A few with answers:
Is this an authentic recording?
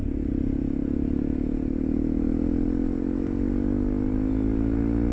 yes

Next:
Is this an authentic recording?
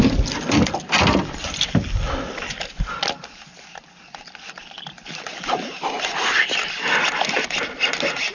yes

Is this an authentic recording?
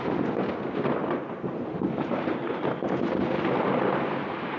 yes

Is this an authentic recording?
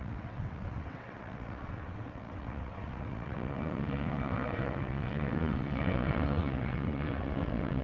no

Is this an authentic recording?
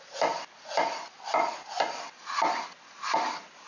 yes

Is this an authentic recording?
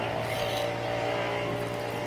yes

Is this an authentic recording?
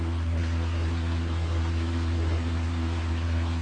no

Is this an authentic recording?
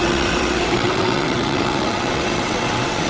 no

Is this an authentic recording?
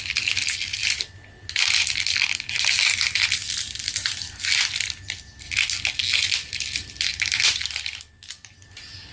yes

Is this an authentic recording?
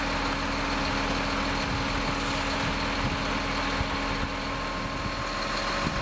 yes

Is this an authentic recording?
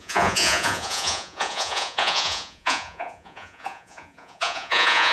no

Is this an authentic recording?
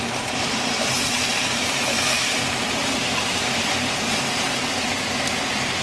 no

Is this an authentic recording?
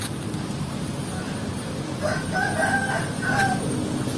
yes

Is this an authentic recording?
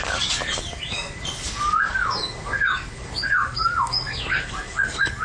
no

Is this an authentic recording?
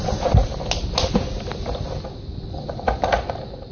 yes